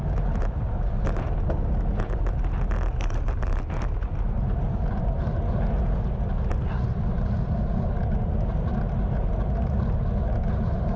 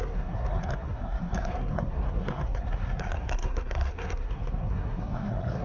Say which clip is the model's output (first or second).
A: second